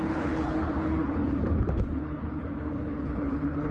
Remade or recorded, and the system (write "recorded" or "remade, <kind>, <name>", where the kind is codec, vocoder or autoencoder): remade, codec, HILCodec